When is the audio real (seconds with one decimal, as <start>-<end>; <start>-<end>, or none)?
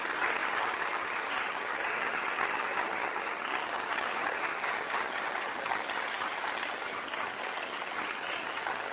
none